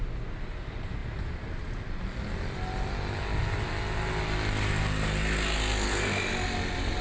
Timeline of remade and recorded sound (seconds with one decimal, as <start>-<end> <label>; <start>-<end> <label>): 0.0-7.0 recorded